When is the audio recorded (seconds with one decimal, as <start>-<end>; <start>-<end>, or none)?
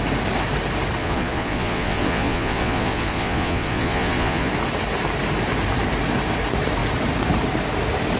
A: 0.0-1.0; 4.5-8.2